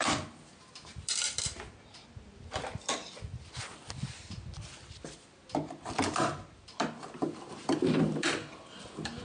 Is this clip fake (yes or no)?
no